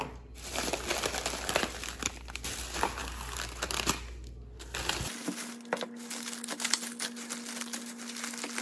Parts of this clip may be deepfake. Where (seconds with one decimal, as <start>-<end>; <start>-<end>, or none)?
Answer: none